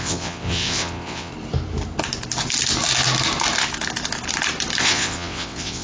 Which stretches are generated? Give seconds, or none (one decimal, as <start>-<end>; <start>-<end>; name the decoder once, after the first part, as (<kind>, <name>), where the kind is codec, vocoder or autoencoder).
0.0-1.3 (vocoder, WaveNeXt); 4.8-5.8